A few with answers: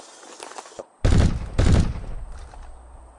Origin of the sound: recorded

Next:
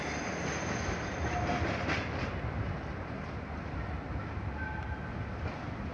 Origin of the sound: recorded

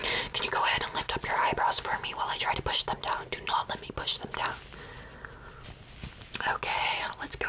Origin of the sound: recorded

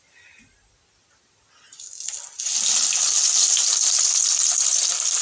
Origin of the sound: recorded